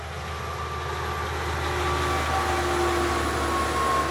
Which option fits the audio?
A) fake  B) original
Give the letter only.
B